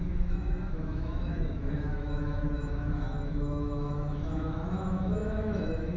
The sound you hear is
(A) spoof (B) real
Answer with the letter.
A